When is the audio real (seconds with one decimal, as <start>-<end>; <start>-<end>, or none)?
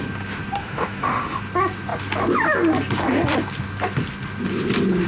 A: 0.0-0.6; 1.4-5.1